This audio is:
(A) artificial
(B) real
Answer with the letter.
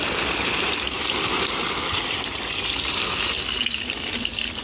B